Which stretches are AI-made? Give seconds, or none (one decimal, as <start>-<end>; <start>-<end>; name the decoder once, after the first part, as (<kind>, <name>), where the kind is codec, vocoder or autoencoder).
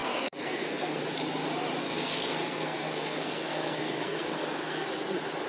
0.0-1.0 (codec, SNAC); 1.8-5.1